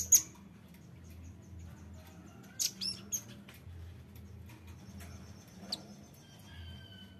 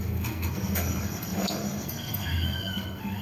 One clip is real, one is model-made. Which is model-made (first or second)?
second